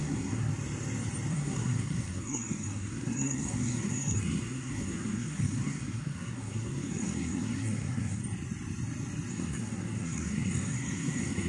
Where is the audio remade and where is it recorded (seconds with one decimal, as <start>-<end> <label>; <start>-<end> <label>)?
0.0-0.5 remade; 0.5-1.3 recorded; 1.3-8.2 remade; 8.2-9.3 recorded; 9.3-11.5 remade